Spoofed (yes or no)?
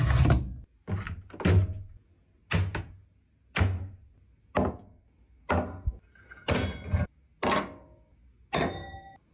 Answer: no